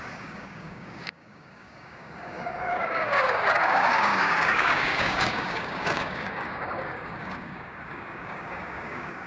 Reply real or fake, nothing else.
fake